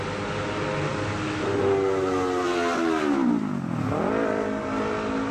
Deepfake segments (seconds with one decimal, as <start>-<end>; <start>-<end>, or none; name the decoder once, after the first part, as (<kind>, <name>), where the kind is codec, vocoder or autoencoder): 0.9-4.1 (vocoder, BigVGAN v2)